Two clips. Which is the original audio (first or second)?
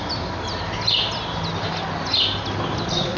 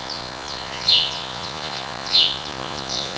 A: first